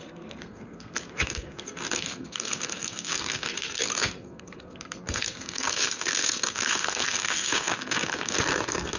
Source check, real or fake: fake